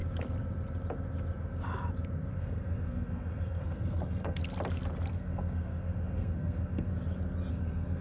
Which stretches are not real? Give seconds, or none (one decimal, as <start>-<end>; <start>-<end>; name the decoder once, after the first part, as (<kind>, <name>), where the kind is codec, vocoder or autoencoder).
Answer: 2.3-4.4 (codec, SNAC); 5.1-6.9; 7.5-8.0